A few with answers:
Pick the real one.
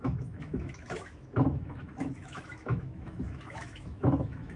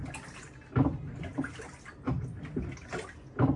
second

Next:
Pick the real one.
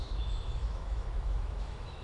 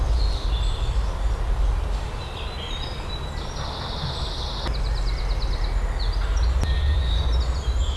second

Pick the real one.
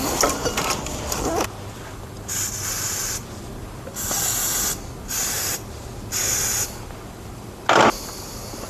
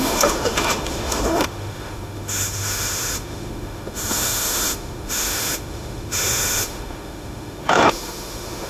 first